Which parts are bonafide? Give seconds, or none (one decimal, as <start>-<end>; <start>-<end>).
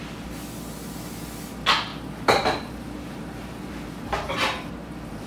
0.0-1.9